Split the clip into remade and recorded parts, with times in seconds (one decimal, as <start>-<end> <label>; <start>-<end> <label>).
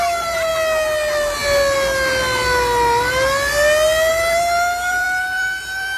0.0-0.5 remade; 0.5-4.1 recorded; 4.1-6.0 remade